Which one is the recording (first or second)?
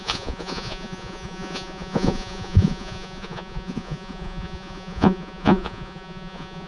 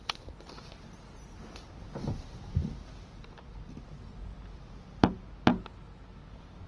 second